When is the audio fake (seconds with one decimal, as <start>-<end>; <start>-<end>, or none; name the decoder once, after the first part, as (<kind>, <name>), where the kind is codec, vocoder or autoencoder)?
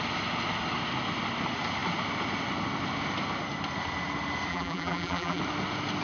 4.5-5.4 (vocoder, BigVGAN v2)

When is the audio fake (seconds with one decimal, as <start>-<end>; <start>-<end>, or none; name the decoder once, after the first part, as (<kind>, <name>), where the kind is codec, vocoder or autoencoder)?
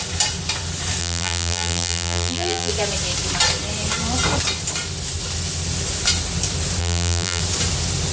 1.0-2.7 (vocoder, BigVGAN v2); 6.8-7.4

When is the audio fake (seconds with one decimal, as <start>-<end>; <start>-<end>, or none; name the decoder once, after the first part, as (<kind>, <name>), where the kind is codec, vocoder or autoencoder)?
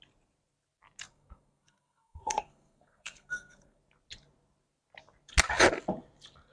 1.1-3.8 (codec, SNAC)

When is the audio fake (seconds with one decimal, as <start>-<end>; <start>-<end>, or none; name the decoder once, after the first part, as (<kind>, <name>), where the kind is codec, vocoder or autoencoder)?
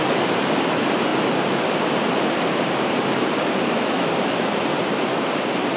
none